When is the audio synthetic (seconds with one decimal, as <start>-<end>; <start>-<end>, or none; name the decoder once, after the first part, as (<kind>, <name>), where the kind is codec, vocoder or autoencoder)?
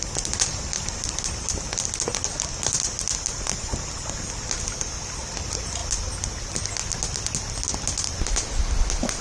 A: none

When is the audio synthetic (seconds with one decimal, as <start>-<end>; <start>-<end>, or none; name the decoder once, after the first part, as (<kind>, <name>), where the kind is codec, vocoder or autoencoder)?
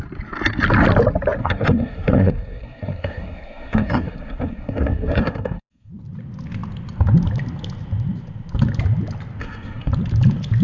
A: 1.4-5.9 (codec, SNAC); 9.4-9.9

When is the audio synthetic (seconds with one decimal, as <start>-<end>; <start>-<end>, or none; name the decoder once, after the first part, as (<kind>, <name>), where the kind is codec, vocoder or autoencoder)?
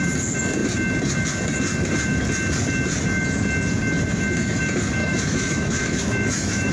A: 5.0-6.7 (autoencoder, DAC-VAE)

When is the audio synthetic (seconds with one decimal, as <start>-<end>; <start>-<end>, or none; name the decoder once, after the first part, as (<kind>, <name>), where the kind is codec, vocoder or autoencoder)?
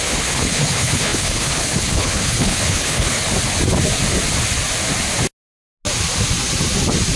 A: 0.0-3.2 (codec, HILCodec)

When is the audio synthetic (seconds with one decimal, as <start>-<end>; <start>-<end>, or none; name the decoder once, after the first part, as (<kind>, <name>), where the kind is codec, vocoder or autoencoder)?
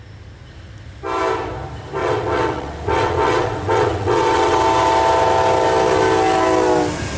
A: 2.0-4.6 (vocoder, WaveNeXt)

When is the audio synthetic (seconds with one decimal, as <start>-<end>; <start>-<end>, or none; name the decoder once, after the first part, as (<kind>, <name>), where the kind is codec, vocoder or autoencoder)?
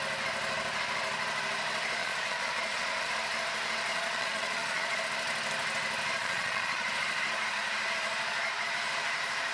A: 2.0-3.1 (vocoder, Vocos); 3.9-5.0; 6.2-6.9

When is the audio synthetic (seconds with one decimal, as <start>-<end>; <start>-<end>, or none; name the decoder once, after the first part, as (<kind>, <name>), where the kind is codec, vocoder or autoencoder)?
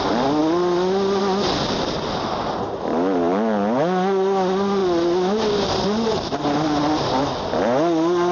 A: none